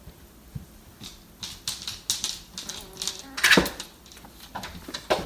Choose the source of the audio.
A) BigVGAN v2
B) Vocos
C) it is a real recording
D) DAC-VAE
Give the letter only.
C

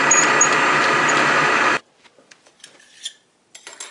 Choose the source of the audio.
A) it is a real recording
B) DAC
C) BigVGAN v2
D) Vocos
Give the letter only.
A